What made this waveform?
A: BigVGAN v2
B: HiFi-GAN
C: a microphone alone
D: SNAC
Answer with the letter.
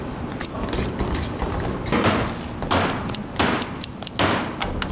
C